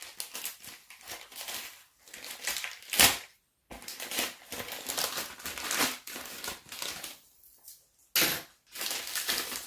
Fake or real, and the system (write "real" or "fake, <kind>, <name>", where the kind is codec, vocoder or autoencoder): real